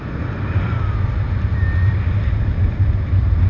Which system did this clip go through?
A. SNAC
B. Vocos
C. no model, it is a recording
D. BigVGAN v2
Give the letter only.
C